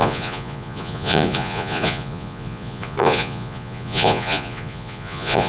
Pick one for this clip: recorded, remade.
remade